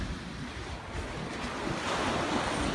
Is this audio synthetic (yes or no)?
no